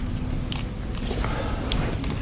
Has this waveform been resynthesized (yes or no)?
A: no